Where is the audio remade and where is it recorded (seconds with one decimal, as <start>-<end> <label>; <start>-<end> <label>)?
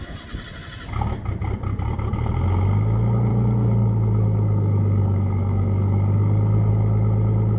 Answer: 0.0-3.3 recorded; 3.3-6.7 remade; 6.7-7.6 recorded